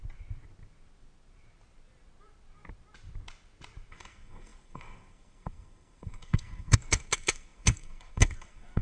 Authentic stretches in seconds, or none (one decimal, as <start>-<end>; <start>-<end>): 0.0-3.9